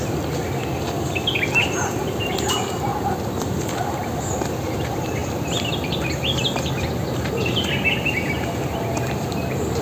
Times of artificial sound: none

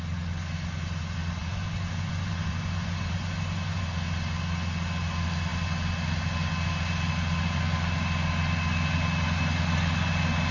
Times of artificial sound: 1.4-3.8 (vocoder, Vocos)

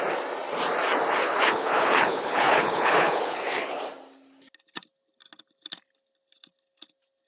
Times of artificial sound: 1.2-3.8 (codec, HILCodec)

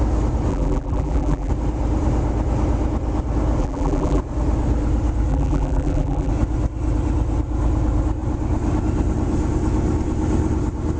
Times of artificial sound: 0.5-1.5 (vocoder, BigVGAN v2); 3.6-4.2; 5.3-6.3